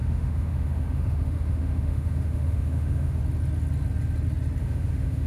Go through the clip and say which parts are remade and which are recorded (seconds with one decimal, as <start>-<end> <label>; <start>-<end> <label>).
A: 0.0-3.2 remade; 3.2-4.6 recorded; 4.6-5.3 remade